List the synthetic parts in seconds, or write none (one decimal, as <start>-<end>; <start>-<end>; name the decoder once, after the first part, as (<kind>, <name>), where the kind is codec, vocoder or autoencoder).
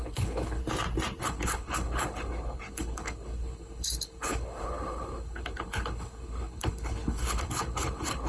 0.0-0.6 (codec, HILCodec); 1.2-8.3